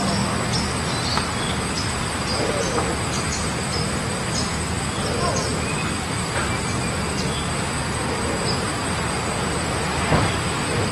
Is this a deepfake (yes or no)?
no